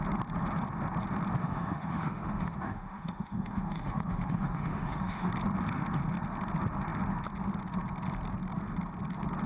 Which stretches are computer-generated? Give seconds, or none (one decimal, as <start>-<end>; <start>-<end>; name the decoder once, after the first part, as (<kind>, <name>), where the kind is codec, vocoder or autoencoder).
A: 1.4-5.3 (autoencoder, DAC-VAE)

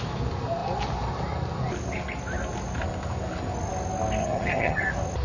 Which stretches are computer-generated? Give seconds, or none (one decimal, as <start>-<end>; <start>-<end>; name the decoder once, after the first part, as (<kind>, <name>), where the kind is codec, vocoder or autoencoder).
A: 4.2-4.8 (vocoder, HiFi-GAN)

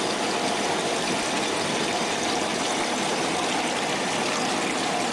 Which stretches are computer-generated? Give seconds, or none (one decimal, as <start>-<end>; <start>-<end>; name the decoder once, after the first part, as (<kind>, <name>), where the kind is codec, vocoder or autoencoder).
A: none

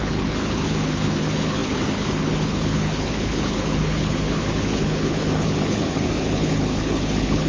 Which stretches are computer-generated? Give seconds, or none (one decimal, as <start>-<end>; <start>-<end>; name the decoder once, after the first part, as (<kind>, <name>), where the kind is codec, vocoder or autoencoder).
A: 0.0-7.5 (codec, HILCodec)

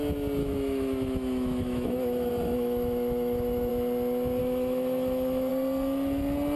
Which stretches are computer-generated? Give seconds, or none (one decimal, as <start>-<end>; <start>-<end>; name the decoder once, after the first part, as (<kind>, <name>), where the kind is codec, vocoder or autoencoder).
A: 0.4-3.7 (autoencoder, DAC-VAE); 4.4-5.5

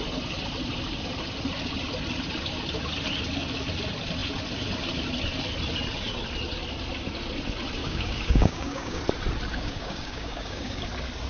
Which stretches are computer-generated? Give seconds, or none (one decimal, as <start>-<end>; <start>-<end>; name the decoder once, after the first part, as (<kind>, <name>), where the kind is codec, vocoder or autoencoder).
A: 7.8-9.0 (codec, DAC); 9.5-10.9

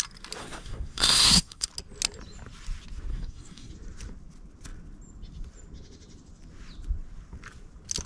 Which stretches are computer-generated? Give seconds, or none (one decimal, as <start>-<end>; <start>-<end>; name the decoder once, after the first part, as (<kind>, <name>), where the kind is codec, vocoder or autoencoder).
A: 0.4-1.7 (codec, SNAC); 3.1-3.7